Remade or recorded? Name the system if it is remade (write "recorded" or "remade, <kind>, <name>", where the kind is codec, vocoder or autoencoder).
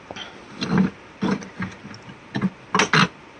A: recorded